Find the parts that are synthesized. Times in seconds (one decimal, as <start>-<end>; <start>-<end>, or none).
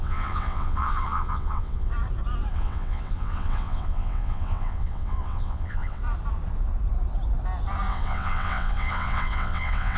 0.0-1.9; 2.5-6.0; 7.9-10.0